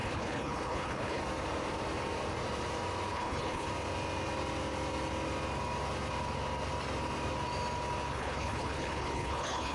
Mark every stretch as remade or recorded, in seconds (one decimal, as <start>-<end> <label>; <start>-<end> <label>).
0.0-1.2 remade; 1.2-3.1 recorded; 3.1-3.7 remade; 3.7-8.1 recorded; 8.1-9.7 remade